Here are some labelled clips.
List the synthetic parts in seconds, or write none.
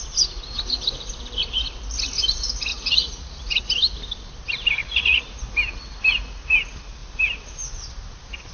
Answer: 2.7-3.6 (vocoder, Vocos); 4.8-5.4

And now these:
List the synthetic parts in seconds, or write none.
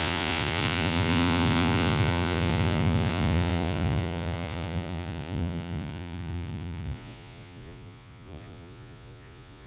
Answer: 0.0-9.7 (vocoder, Vocos)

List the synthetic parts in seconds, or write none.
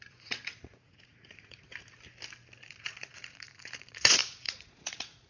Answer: 0.0-1.7 (vocoder, Vocos); 2.6-5.3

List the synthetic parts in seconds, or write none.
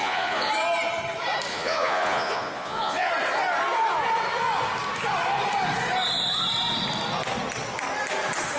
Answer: 0.0-0.5 (vocoder, Vocos); 1.5-3.1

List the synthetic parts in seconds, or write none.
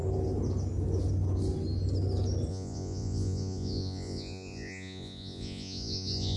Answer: 2.5-6.4 (vocoder, Vocos)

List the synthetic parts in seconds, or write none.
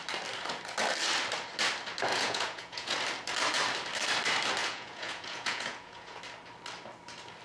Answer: 2.1-3.0 (vocoder, Vocos); 4.6-6.2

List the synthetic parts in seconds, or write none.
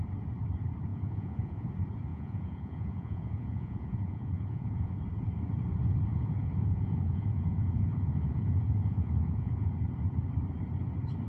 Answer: 0.9-1.7 (vocoder, Vocos); 2.1-4.9; 6.1-9.7